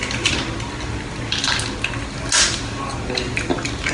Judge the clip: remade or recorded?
recorded